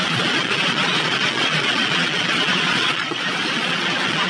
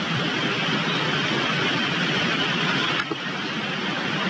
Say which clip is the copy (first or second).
first